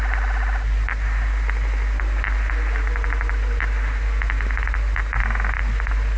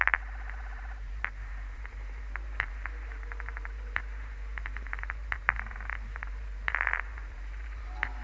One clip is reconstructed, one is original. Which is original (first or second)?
first